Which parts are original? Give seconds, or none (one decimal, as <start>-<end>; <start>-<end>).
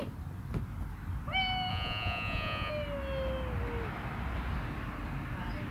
0.0-1.7; 2.7-5.7